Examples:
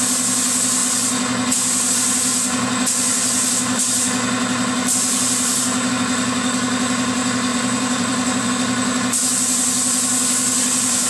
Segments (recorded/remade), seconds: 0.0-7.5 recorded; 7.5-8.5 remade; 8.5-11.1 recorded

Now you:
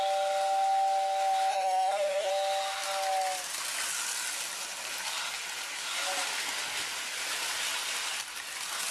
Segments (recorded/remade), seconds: 0.0-1.5 recorded; 1.5-2.3 remade; 2.3-8.9 recorded

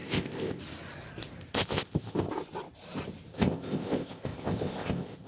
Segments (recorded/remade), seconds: 0.0-0.6 remade; 0.6-1.5 recorded; 1.5-2.3 remade; 2.3-3.3 recorded; 3.3-5.3 remade

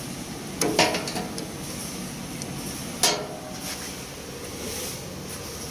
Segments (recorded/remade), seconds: 0.0-1.8 recorded; 1.8-2.5 remade; 2.5-5.7 recorded

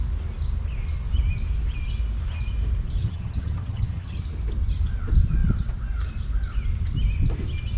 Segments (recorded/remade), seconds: 0.0-3.0 recorded; 3.0-4.2 remade; 4.2-7.8 recorded

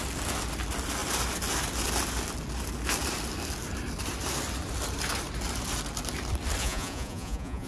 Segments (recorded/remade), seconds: 0.0-6.6 recorded; 6.6-7.7 remade

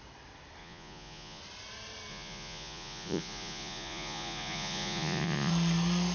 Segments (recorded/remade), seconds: 0.0-0.6 recorded; 0.6-1.4 remade; 1.4-2.1 recorded; 2.1-5.5 remade; 5.5-6.1 recorded

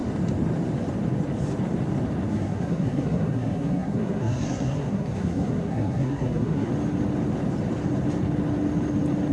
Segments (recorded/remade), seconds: 0.0-2.3 recorded; 2.3-6.7 remade; 6.7-9.3 recorded